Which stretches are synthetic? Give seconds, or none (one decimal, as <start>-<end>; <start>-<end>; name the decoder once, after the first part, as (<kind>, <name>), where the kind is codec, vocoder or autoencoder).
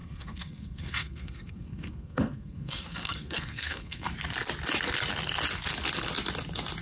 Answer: 0.0-4.1 (codec, SNAC)